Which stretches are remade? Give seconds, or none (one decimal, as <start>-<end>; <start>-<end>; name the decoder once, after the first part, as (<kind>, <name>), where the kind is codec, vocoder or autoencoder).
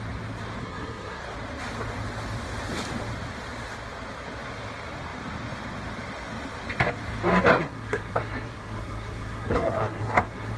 0.6-1.2 (codec, SNAC); 7.5-10.6